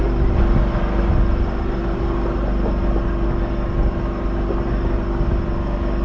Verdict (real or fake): real